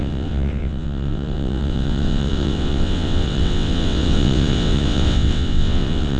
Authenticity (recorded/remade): remade